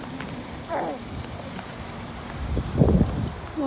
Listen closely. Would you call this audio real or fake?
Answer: real